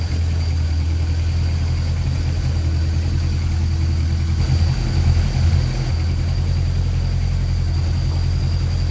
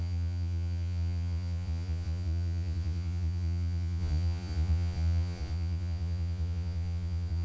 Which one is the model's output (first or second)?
second